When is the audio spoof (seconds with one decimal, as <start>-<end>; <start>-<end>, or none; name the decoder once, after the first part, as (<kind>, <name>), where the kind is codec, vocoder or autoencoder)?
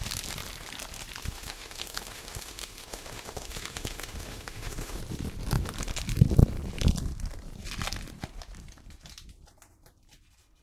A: 1.2-5.0 (autoencoder, DAC-VAE)